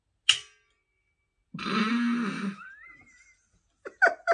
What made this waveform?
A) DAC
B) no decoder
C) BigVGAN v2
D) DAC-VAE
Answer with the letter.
B